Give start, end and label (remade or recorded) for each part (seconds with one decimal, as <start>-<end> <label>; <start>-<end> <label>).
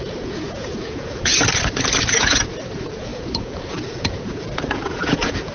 0.0-1.3 remade; 1.3-2.0 recorded; 2.0-5.5 remade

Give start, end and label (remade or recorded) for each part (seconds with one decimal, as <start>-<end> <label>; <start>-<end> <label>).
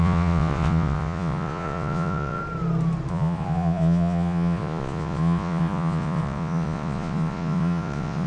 0.0-2.4 remade; 2.4-3.1 recorded; 3.1-8.3 remade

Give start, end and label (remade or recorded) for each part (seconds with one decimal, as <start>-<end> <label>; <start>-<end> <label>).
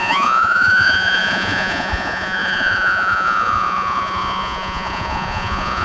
0.0-5.8 remade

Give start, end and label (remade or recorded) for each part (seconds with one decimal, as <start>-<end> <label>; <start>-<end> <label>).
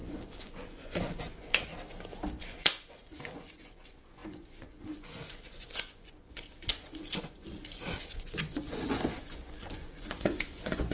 0.0-1.7 remade; 1.7-2.4 recorded; 2.4-10.9 remade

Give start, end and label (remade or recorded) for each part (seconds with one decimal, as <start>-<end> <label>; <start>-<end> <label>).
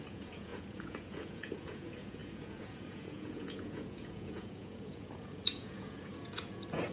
0.0-6.9 remade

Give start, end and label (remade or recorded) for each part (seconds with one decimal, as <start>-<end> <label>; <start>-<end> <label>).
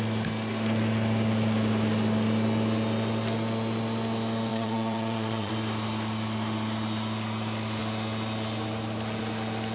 0.0-4.5 recorded; 4.5-5.5 remade; 5.5-9.7 recorded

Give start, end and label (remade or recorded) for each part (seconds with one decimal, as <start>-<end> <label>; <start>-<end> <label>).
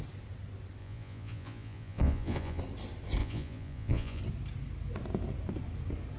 0.0-0.8 recorded; 0.8-2.6 remade; 2.6-3.2 recorded; 3.2-4.2 remade; 4.2-6.2 recorded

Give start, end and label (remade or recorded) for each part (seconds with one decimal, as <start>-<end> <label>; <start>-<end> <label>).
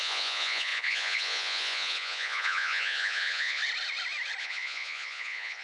0.0-3.6 remade; 3.6-4.4 recorded; 4.4-5.6 remade